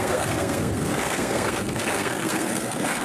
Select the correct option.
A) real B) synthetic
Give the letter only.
B